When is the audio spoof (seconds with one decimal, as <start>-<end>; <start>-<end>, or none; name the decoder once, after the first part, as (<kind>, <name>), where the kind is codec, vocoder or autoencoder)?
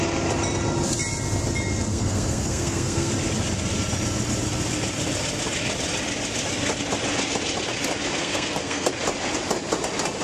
1.9-3.1 (codec, SNAC); 8.2-8.9